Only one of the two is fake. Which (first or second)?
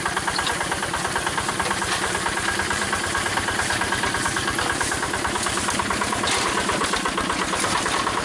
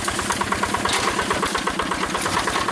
first